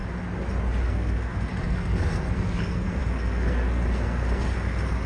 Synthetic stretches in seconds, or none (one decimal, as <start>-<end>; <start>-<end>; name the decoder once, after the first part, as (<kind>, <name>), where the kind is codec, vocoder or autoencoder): 0.8-5.1 (codec, SNAC)